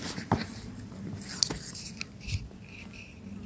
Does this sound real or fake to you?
real